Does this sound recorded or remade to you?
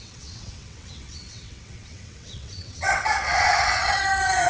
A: remade